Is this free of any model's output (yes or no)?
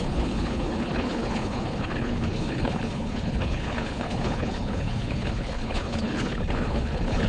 no